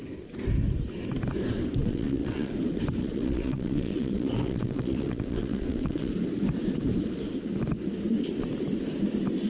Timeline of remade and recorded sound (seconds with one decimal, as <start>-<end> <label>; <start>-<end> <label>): 0.0-1.8 recorded; 1.8-2.5 remade; 2.5-3.0 recorded; 3.0-6.1 remade; 6.1-9.5 recorded